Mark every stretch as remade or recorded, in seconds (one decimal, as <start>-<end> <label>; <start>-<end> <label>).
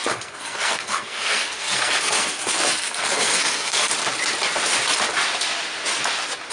0.0-3.9 remade; 3.9-6.5 recorded